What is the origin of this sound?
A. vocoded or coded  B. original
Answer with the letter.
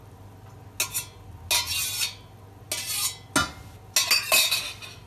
B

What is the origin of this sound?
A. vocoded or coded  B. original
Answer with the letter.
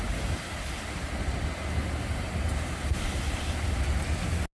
B